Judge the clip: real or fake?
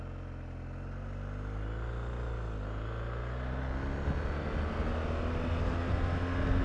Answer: real